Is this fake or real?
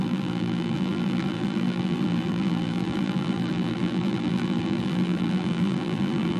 fake